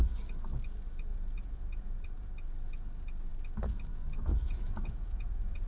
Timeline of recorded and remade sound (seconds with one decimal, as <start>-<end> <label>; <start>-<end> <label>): 0.0-1.1 recorded; 1.1-2.0 remade; 2.0-4.3 recorded; 4.3-5.7 remade